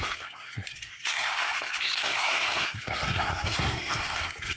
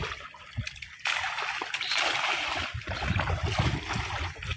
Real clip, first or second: second